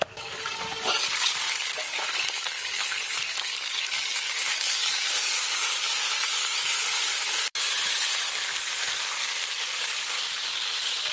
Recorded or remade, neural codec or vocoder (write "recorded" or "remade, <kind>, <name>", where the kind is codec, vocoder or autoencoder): remade, codec, DAC